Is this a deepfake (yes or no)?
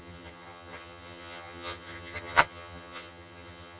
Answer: yes